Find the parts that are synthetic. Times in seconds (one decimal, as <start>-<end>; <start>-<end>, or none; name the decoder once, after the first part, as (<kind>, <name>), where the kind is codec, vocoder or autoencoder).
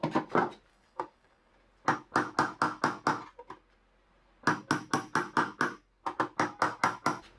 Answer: 0.7-1.5 (codec, DAC)